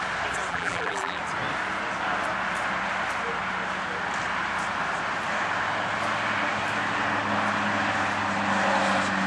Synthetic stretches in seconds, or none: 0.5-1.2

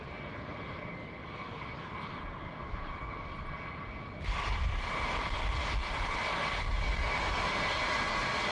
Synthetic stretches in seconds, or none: 2.6-5.2

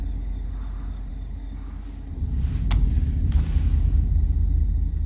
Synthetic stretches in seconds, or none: none

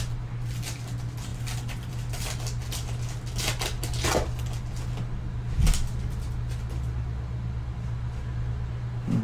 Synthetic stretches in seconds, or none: none

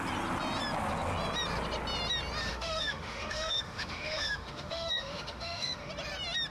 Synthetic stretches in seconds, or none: 2.5-5.9

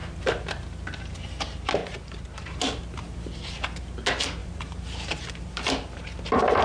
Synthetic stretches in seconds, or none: 4.4-6.0

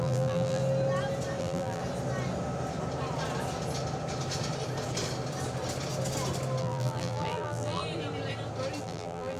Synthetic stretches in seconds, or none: 0.0-0.6; 1.4-1.8; 6.6-7.8; 8.8-9.4